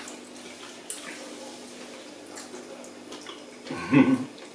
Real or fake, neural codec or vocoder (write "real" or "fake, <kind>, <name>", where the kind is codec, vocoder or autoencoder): real